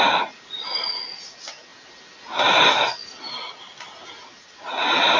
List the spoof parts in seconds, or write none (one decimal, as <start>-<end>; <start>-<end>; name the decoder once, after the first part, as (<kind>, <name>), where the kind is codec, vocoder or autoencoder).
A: 3.0-3.8 (vocoder, BigVGAN v2)

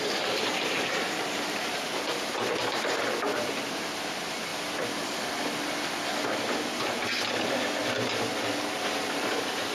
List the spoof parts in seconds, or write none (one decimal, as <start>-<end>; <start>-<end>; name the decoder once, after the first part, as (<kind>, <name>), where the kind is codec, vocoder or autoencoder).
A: 0.0-4.5 (vocoder, BigVGAN v2); 6.3-7.0; 8.8-9.7

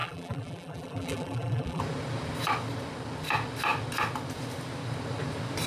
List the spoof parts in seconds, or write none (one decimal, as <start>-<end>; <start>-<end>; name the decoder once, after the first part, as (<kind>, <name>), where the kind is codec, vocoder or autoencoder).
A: 0.0-1.8 (vocoder, BigVGAN v2)

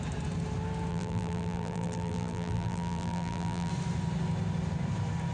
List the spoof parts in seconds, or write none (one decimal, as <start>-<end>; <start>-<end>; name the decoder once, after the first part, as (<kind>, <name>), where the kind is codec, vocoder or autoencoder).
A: 0.9-3.7 (vocoder, BigVGAN v2)

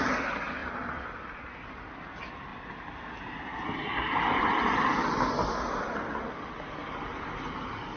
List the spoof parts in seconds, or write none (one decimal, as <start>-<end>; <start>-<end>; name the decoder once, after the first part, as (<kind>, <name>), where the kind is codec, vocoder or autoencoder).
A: 0.6-1.9 (vocoder, BigVGAN v2)

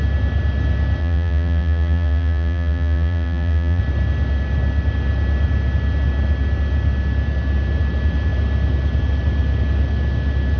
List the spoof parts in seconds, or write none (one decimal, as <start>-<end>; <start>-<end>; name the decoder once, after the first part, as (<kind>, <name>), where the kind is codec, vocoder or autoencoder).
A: 1.0-3.8 (vocoder, BigVGAN v2)

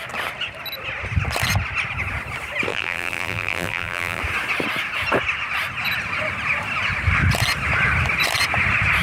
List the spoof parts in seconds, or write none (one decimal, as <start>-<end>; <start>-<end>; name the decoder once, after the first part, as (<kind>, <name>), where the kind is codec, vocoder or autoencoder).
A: 2.7-4.2 (vocoder, BigVGAN v2)